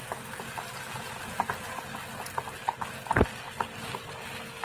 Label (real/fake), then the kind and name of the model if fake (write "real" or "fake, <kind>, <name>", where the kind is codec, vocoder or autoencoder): real